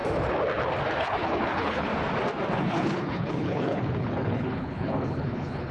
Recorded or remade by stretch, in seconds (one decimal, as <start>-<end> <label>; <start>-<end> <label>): 0.0-1.0 recorded; 1.0-1.9 remade; 1.9-2.5 recorded; 2.5-5.7 remade